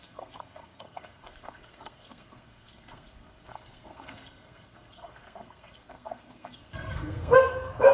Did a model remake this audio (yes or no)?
yes